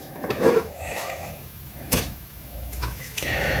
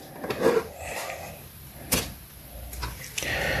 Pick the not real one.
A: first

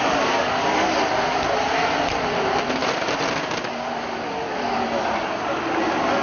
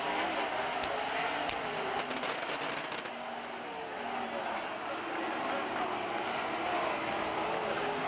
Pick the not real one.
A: first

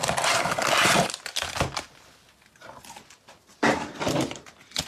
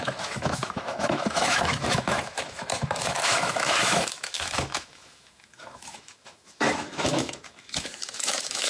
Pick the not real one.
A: second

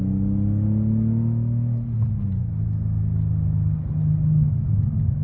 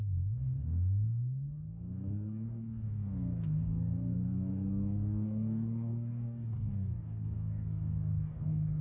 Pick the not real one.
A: second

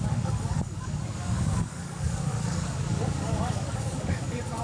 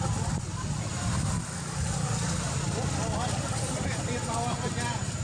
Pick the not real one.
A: first